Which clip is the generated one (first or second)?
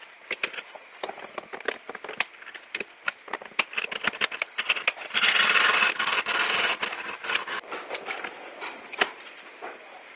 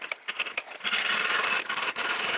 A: second